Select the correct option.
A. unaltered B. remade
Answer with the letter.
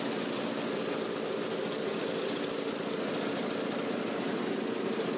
A